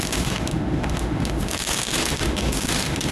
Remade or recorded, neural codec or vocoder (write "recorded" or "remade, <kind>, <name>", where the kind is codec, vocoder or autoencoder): remade, autoencoder, DAC-VAE